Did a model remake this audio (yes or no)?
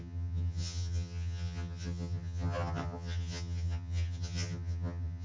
yes